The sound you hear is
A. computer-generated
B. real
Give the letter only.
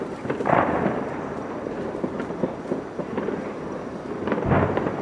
A